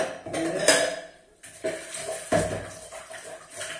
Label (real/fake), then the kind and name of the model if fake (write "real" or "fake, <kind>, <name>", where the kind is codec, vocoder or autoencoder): real